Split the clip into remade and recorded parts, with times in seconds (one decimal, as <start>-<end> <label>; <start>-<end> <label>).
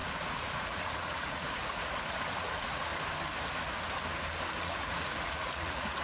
0.0-1.6 remade; 1.6-2.3 recorded; 2.3-2.9 remade; 2.9-4.6 recorded; 4.6-6.0 remade